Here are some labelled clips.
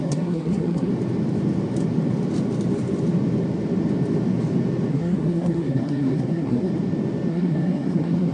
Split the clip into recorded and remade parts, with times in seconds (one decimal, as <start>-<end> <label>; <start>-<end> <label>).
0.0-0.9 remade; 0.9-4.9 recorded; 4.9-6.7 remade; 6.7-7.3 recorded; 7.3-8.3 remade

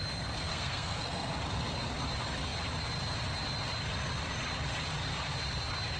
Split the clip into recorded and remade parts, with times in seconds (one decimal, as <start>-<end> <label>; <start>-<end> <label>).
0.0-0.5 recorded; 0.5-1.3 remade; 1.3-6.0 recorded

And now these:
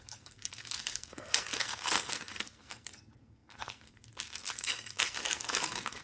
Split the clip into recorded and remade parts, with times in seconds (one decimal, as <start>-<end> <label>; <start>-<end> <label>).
0.0-6.0 remade

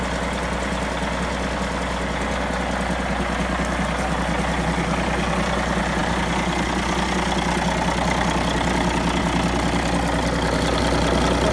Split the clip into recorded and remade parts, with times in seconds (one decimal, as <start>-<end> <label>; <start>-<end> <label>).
0.0-11.5 recorded

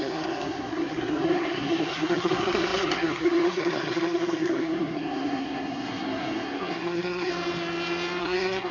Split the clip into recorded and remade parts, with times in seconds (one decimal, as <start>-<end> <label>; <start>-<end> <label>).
0.0-7.3 remade; 7.3-8.2 recorded; 8.2-8.7 remade

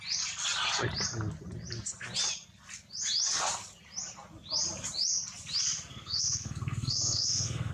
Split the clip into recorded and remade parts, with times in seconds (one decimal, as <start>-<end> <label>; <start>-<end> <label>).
0.0-5.9 recorded; 5.9-7.7 remade